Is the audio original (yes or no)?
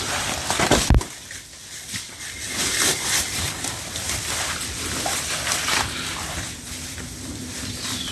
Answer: no